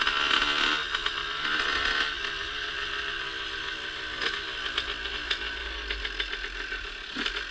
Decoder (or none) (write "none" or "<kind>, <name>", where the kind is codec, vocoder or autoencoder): none